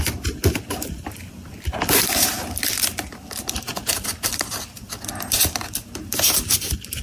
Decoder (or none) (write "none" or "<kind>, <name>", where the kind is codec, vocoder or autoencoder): none